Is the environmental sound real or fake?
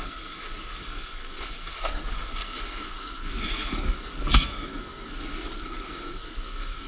fake